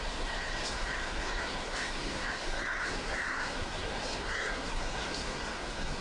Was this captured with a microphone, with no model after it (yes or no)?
no